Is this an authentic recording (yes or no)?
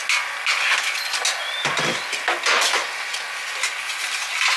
yes